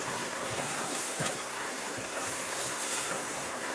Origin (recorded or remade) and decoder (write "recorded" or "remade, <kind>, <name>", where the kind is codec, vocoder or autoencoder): remade, codec, SNAC